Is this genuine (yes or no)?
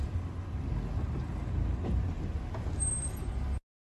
yes